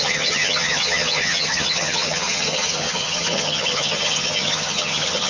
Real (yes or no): no